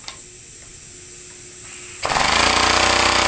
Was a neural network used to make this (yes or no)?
no